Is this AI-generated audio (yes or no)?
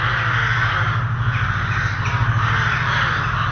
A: no